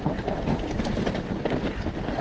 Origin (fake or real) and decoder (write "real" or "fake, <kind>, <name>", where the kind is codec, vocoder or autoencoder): real